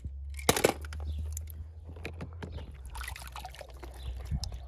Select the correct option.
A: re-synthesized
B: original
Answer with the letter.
B